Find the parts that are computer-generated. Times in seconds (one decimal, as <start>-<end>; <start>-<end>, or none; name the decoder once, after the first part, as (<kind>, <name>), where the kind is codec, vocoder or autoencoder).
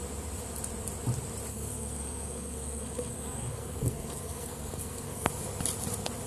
1.5-5.3 (codec, SNAC)